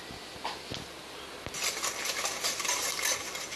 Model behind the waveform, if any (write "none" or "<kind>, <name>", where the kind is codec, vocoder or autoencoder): none